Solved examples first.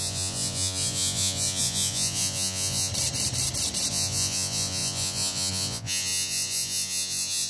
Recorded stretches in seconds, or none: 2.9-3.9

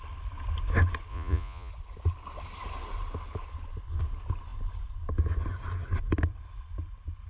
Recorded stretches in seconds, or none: 0.0-1.1; 1.7-7.3

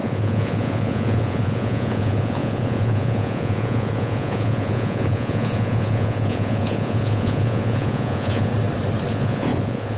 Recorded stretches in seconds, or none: 8.5-9.1

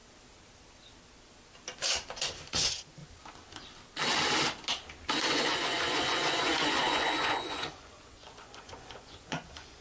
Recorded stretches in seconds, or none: 0.0-2.5; 3.0-5.3

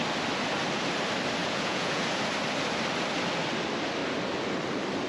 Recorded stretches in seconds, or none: 0.0-1.4; 2.0-5.1

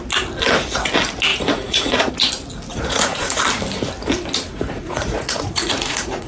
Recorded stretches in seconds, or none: 0.0-1.3; 2.1-2.7; 3.4-4.5

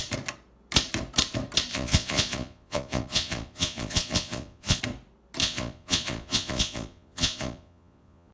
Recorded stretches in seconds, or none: 0.0-1.7; 4.8-5.4